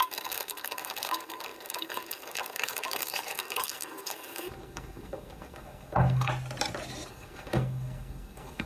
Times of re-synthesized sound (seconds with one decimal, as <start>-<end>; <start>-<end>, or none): 0.0-6.3; 7.1-8.7